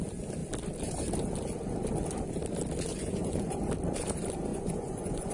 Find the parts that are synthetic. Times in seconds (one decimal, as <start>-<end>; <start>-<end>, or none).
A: 2.9-3.5; 4.5-5.3